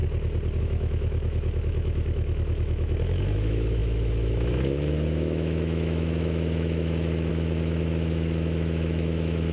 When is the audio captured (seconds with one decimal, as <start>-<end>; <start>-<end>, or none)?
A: 0.0-0.6